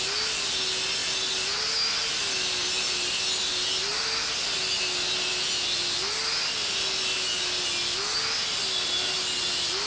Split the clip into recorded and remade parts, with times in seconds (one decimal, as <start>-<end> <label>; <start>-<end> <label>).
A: 0.0-9.9 recorded